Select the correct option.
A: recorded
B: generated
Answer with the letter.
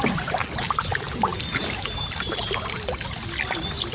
A